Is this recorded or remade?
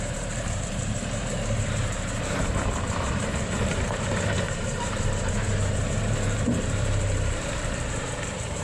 remade